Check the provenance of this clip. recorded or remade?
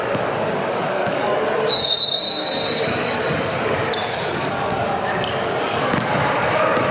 remade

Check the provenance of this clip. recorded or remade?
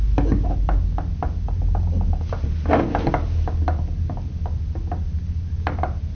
recorded